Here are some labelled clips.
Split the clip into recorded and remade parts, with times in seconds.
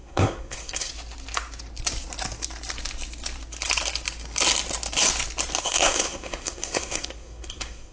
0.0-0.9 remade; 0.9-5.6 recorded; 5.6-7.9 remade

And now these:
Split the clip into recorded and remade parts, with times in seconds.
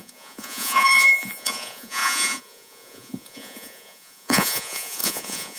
0.0-5.6 remade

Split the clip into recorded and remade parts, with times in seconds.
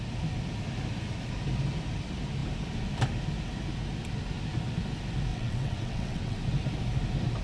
0.0-5.3 recorded; 5.3-6.4 remade; 6.4-7.4 recorded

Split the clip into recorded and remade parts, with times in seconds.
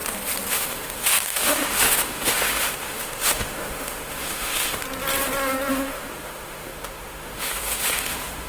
0.0-0.5 recorded; 0.5-4.8 remade; 4.8-5.7 recorded; 5.7-8.5 remade